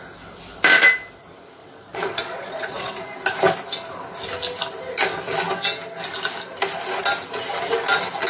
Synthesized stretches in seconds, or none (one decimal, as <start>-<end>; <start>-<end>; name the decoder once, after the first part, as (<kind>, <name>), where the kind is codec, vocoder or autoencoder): 1.6-2.9 (vocoder, Vocos)

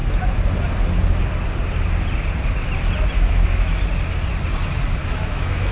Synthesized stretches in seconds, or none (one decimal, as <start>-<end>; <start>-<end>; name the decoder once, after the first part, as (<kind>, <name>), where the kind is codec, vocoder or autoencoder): 3.3-3.8 (autoencoder, DAC-VAE); 5.1-5.7

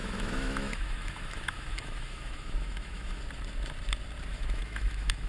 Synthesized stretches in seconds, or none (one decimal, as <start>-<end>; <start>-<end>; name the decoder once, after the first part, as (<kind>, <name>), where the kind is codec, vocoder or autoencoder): 0.0-3.2 (autoencoder, DAC-VAE); 4.3-5.3

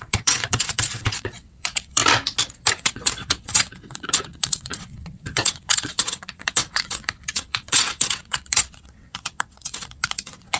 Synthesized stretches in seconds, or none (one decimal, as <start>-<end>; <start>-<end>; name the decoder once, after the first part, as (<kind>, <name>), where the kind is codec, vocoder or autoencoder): 0.0-2.0 (vocoder, WaveNeXt); 2.7-10.6